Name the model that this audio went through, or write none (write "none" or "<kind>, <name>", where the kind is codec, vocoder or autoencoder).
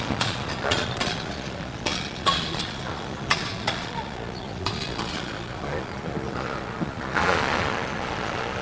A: vocoder, Vocos